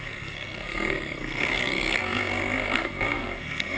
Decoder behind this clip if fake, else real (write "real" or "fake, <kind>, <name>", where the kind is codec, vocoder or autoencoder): fake, codec, SNAC